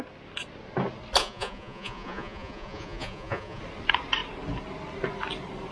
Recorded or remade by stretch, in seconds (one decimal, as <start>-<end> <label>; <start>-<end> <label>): 0.0-1.2 recorded; 1.2-3.6 remade; 3.6-5.7 recorded